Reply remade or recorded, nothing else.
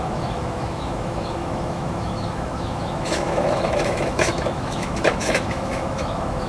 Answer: remade